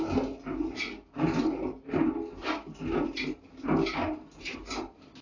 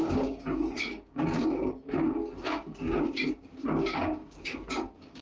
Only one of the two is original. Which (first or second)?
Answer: first